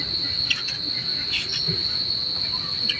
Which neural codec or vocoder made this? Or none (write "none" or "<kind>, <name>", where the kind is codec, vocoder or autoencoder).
none